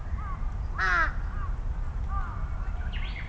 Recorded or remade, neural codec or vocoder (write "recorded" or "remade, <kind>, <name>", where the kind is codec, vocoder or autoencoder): recorded